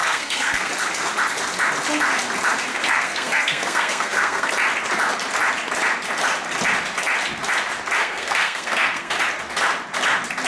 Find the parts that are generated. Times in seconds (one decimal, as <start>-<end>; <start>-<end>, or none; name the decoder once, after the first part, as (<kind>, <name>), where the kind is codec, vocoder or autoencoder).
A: 0.0-0.7 (codec, SNAC); 2.7-4.5; 8.0-9.1

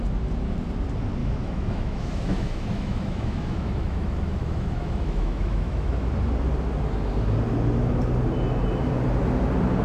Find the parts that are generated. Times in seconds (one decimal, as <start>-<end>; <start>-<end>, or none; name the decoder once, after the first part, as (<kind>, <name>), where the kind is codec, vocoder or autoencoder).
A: 1.2-6.1 (autoencoder, DAC-VAE)

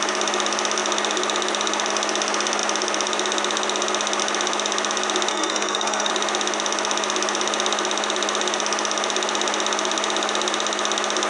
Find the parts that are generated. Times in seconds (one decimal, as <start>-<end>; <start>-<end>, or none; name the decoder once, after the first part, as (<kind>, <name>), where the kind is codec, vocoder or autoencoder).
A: 5.3-6.1 (codec, SNAC)

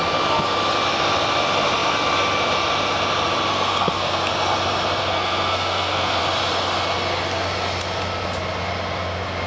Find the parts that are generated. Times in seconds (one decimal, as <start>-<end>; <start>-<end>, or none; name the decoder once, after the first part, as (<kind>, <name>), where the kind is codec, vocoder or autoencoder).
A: 3.5-4.2 (codec, SNAC); 5.0-6.2

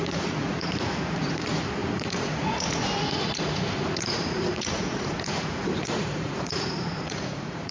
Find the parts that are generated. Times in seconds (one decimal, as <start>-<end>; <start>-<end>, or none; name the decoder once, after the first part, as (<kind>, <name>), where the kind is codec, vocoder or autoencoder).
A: 0.0-7.7 (vocoder, Vocos)

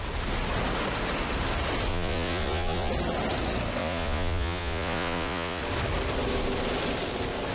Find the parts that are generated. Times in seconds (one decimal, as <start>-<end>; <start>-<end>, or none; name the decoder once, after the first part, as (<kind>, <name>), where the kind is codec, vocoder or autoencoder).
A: 1.9-2.9 (vocoder, Vocos); 3.8-5.6

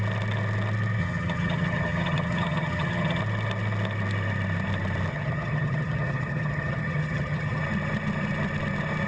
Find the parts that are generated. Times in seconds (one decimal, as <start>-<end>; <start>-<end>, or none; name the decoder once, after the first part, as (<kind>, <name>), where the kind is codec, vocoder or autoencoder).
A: 1.0-3.2 (vocoder, HiFi-GAN); 5.1-7.6